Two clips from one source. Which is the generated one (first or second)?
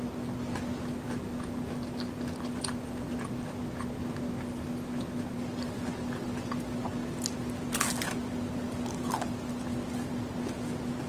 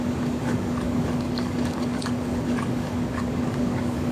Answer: second